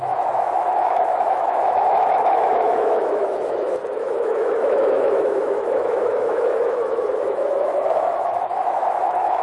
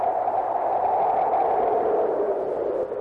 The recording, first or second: second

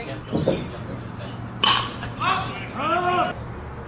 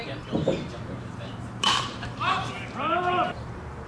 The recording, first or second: first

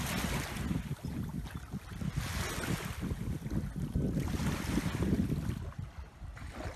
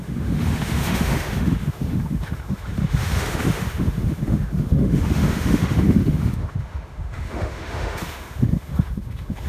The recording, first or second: first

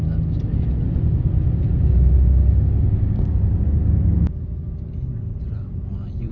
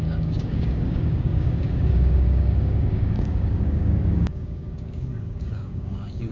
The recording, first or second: first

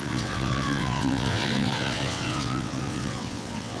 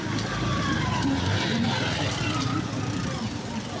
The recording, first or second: second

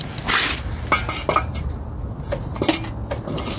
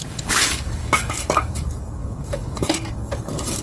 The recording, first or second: first